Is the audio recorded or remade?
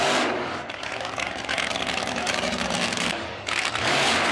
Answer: remade